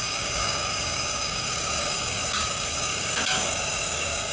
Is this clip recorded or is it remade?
remade